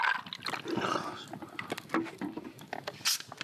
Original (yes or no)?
yes